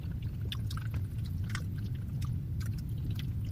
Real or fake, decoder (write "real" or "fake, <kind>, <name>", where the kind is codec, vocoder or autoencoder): real